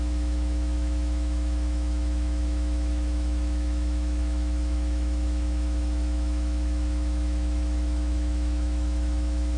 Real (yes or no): no